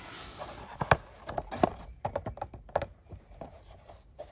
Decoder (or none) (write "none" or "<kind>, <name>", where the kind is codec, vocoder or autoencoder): none